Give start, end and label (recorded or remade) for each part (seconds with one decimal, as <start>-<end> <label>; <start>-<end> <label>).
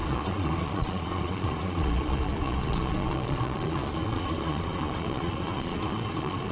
0.0-6.5 remade